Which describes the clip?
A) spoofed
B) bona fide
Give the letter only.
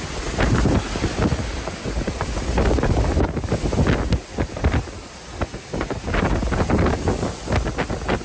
B